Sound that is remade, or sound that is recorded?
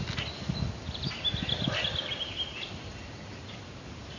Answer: recorded